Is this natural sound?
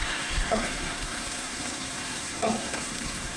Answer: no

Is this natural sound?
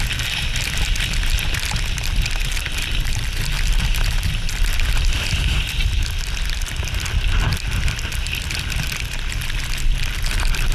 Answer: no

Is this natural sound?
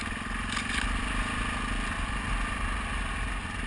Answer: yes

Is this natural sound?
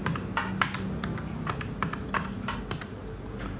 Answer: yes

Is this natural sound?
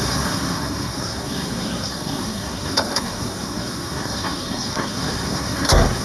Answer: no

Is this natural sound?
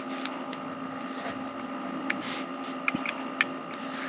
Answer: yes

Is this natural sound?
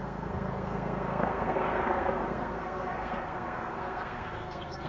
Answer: no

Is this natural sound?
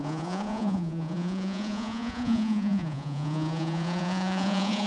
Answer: no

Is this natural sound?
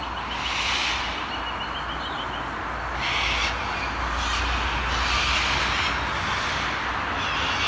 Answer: yes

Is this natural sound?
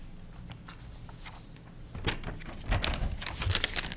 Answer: yes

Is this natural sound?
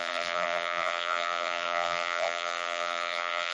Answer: no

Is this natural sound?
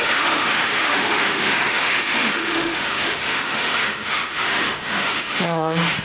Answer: no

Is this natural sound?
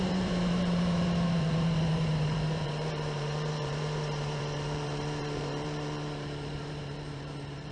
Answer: no